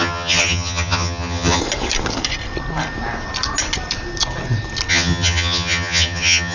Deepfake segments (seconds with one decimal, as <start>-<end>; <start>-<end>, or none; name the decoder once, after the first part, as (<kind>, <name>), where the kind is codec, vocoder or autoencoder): 0.0-1.6 (vocoder, HiFi-GAN); 4.9-6.5